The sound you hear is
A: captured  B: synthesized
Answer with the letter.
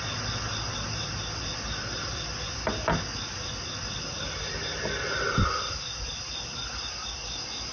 A